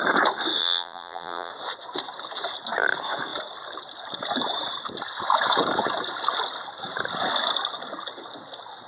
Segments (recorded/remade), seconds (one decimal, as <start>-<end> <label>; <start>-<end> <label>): 0.0-0.6 recorded; 0.6-1.5 remade; 1.5-8.9 recorded